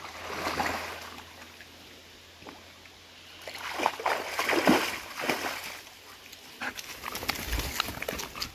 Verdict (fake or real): real